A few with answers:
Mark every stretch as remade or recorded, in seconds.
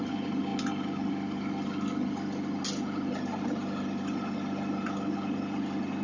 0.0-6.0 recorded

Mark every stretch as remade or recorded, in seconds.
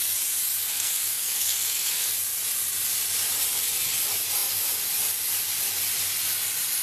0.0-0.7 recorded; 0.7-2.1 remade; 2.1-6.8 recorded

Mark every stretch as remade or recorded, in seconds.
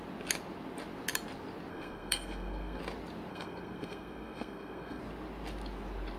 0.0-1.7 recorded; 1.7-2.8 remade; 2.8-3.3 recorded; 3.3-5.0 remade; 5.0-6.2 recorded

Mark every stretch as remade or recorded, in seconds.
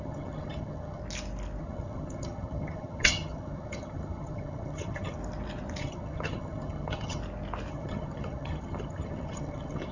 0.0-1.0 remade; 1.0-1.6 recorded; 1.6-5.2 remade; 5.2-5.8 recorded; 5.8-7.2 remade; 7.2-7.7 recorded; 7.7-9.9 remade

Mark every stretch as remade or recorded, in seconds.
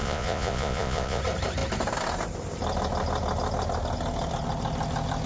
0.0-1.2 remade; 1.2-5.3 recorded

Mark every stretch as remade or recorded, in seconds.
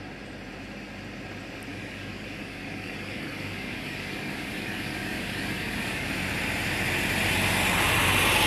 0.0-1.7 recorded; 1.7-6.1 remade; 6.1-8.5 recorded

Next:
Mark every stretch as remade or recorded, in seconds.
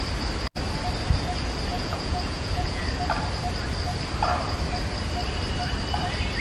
0.0-1.7 recorded; 1.7-2.8 remade; 2.8-6.4 recorded